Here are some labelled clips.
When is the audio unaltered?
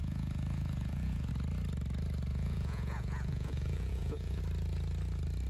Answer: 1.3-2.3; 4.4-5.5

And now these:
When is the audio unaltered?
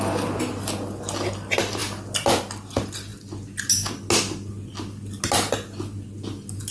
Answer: 0.0-6.7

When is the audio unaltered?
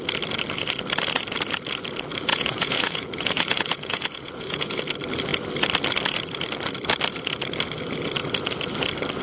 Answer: 0.0-2.3; 4.8-9.2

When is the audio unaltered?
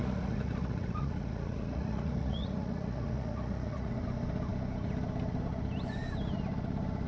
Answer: 3.9-7.1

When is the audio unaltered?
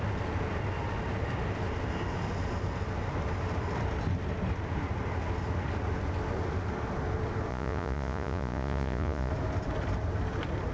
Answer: 0.0-7.5; 9.3-10.7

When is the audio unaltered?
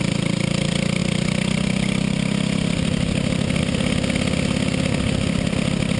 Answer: 0.0-6.0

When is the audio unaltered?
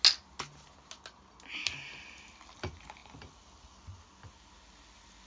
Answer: 0.0-5.3